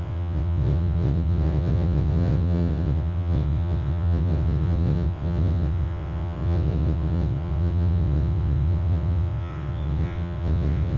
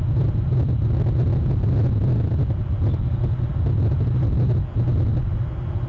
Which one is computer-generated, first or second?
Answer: first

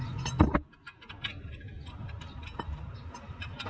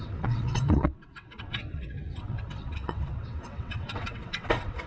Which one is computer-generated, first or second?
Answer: second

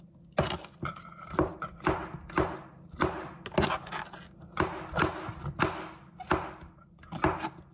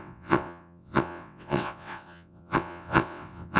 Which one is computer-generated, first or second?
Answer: second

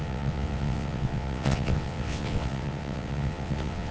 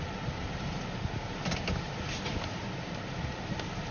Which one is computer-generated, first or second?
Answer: first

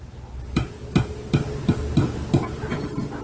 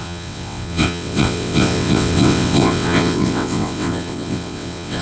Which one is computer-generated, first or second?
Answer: second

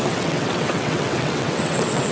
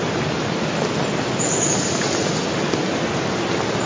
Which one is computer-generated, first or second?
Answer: first